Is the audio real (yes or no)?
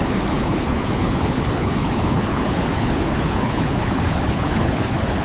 no